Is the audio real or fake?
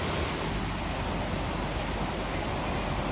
real